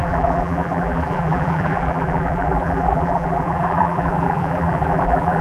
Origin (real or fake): fake